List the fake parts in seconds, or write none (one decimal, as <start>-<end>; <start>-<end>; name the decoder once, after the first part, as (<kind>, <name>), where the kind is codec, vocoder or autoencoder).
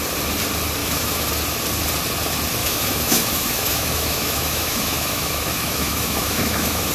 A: 0.8-1.3 (autoencoder, DAC-VAE); 2.6-6.9